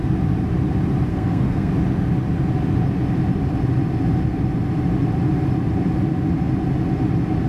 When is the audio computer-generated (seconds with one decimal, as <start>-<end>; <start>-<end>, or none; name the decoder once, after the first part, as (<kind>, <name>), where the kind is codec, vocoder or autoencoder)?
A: 1.1-1.7 (codec, SNAC)